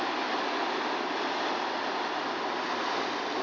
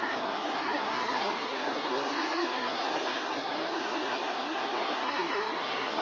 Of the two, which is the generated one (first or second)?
second